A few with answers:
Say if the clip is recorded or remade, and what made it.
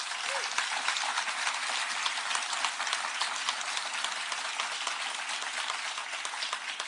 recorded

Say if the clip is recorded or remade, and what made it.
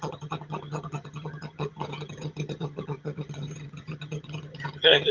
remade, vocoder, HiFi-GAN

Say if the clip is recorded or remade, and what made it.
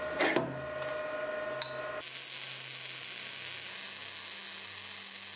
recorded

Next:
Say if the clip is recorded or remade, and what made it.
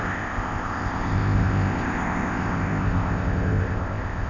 remade, codec, ZipCodec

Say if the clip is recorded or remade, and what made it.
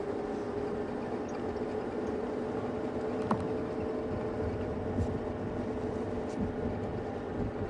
recorded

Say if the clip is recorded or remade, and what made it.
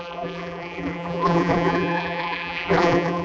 remade, vocoder, BigVGAN v2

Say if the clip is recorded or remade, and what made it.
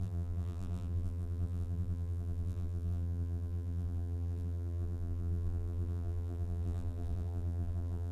remade, vocoder, BigVGAN v2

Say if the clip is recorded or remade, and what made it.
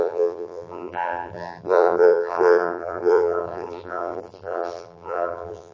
remade, vocoder, BigVGAN v2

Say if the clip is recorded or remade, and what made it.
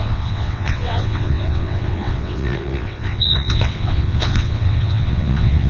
remade, vocoder, WaveNeXt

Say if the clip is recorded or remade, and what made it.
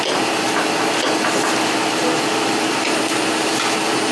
recorded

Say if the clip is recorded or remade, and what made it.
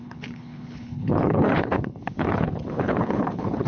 remade, codec, HILCodec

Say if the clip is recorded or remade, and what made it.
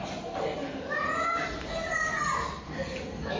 recorded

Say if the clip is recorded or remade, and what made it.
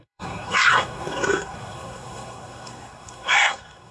remade, codec, SNAC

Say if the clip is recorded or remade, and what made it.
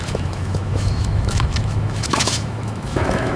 remade, autoencoder, DAC-VAE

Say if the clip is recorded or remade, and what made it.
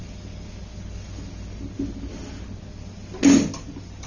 recorded